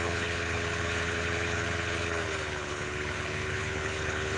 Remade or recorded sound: remade